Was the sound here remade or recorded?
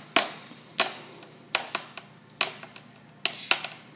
recorded